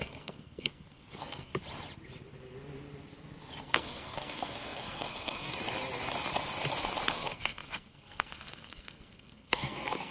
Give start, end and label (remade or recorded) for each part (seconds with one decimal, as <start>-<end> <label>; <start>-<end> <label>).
0.0-1.5 remade; 1.5-3.6 recorded; 3.6-5.5 remade; 5.5-7.1 recorded; 7.1-10.1 remade